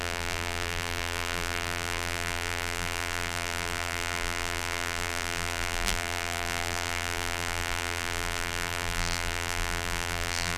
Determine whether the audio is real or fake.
fake